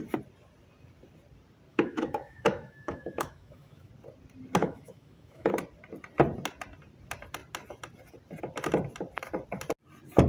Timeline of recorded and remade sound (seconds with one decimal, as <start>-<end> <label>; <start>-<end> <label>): 0.0-1.7 recorded; 1.7-3.9 remade; 3.9-4.6 recorded; 4.6-5.5 remade; 5.5-10.3 recorded